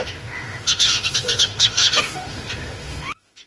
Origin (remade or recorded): remade